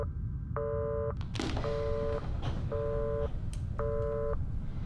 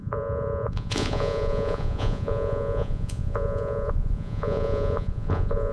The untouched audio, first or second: first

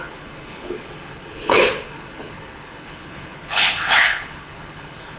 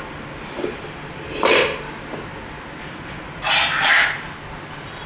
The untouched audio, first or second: second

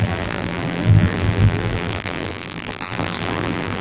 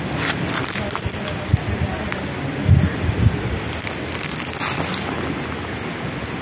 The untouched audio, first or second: second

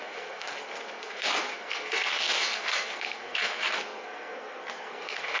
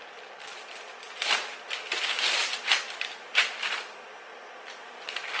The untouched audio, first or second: second